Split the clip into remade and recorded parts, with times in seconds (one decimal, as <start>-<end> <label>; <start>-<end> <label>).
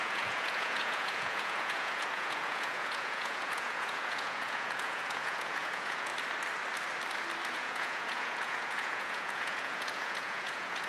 0.0-6.1 remade; 6.1-7.5 recorded; 7.5-10.9 remade